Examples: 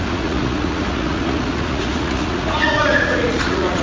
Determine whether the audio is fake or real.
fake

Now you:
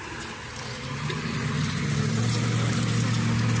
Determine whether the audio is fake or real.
real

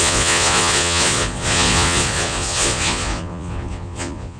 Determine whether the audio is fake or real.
fake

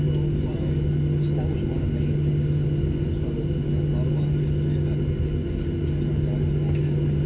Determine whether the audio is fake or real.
real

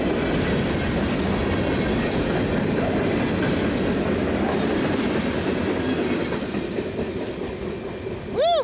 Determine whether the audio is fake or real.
real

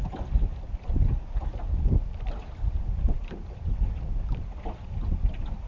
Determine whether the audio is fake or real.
real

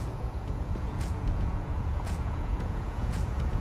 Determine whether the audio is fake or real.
fake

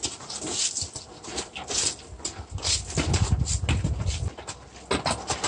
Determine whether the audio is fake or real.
real